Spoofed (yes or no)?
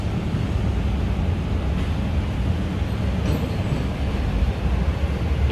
no